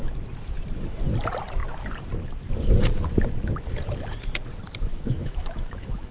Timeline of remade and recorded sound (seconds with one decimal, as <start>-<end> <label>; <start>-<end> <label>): 0.0-4.9 recorded; 4.9-6.1 remade